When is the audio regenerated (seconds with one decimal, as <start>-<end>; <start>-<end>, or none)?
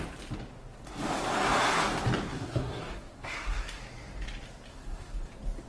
2.3-3.8; 4.7-5.3